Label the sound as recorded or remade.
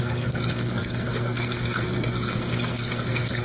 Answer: remade